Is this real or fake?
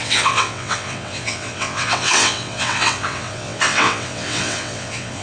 fake